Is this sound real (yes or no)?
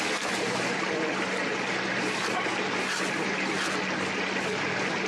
yes